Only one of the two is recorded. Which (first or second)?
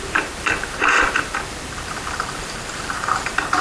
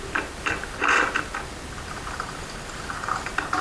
second